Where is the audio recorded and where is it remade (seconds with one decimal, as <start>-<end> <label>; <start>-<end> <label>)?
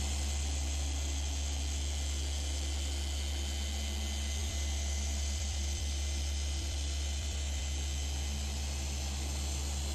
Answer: 0.0-4.4 recorded; 4.4-7.6 remade; 7.6-9.9 recorded